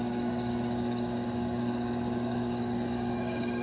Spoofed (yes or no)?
yes